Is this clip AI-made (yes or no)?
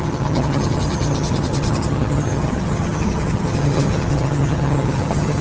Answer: yes